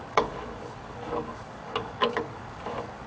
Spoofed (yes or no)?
yes